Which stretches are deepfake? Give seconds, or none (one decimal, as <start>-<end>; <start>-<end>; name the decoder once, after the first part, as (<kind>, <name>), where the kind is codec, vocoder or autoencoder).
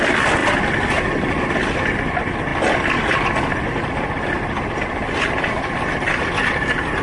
none